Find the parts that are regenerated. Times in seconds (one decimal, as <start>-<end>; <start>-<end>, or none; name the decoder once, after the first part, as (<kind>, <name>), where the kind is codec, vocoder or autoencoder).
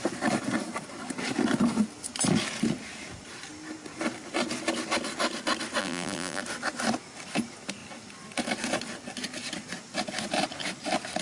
5.8-6.4 (vocoder, BigVGAN v2)